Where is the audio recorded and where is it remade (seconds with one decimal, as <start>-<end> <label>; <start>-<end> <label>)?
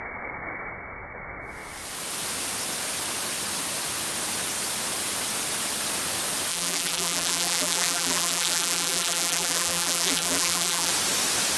0.0-6.5 recorded; 6.5-10.9 remade; 10.9-11.6 recorded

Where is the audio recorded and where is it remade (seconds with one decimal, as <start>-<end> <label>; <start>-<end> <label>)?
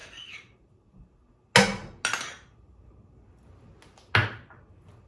0.0-5.1 recorded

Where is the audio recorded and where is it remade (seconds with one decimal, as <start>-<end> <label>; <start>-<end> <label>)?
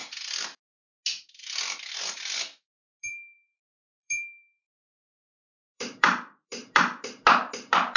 0.0-3.0 recorded; 3.0-6.6 remade; 6.6-7.4 recorded; 7.4-8.0 remade